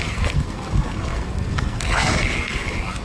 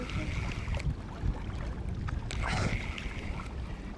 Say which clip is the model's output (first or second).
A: first